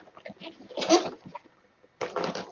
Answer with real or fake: real